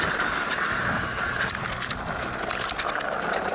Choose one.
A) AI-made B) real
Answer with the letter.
B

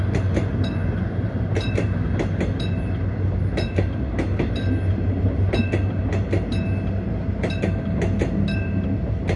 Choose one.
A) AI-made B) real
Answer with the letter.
B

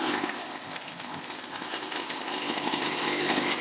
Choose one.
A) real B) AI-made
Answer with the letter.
B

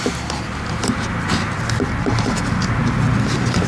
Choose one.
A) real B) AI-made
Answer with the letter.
A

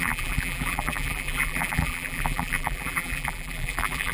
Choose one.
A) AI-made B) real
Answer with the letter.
A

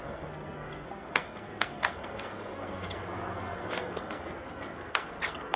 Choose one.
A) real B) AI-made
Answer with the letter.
B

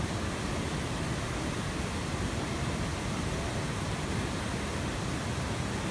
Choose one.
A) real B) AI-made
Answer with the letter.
A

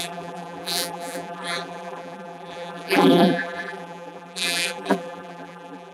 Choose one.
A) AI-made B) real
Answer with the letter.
A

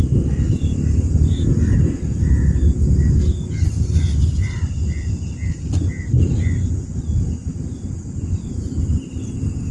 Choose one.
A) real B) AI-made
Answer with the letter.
A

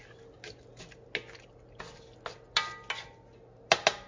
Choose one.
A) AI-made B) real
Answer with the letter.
B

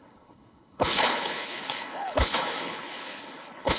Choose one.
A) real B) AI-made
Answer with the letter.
B